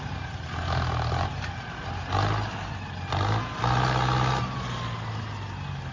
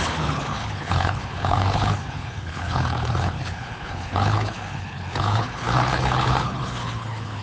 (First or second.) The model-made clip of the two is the second